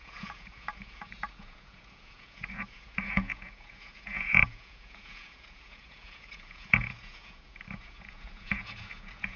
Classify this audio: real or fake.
fake